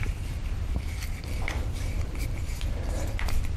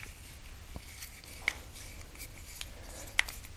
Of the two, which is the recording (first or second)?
second